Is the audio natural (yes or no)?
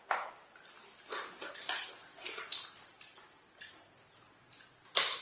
yes